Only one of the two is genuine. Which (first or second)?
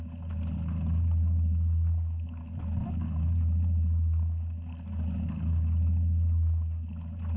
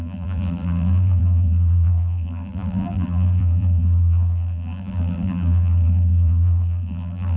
first